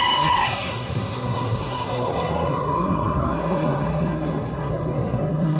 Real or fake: fake